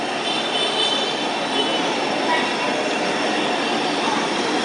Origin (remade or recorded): recorded